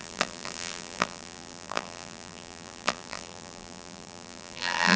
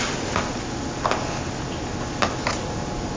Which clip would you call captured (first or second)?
second